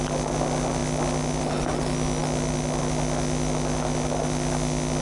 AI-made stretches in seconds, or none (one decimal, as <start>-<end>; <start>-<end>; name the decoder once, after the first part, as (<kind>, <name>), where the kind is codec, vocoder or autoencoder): none